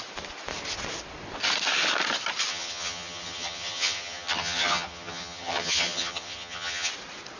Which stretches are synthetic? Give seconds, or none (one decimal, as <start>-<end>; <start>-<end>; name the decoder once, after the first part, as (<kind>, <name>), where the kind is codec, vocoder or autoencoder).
2.5-6.9 (vocoder, HiFi-GAN)